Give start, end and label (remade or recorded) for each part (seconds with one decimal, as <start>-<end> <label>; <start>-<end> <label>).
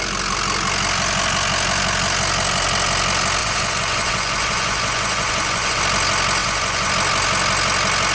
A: 0.0-3.4 recorded; 3.4-5.8 remade; 5.8-6.4 recorded; 6.4-6.9 remade; 6.9-8.1 recorded